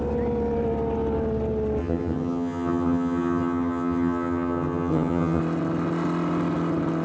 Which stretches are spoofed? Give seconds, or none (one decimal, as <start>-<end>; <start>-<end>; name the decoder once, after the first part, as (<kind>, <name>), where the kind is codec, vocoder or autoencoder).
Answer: 1.8-5.4 (vocoder, HiFi-GAN)